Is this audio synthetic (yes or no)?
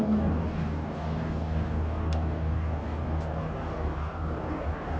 yes